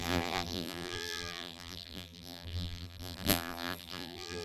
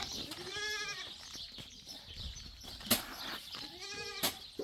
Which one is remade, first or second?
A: first